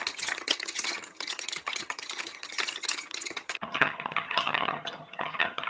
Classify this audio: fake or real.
fake